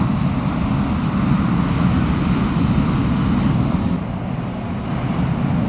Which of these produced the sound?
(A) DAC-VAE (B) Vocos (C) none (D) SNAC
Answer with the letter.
C